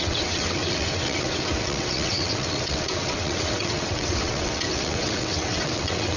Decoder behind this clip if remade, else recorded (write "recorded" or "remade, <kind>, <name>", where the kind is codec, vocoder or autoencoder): remade, vocoder, WaveNeXt